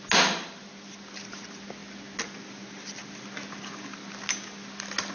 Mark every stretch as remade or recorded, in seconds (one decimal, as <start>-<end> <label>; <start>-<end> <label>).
0.0-5.1 recorded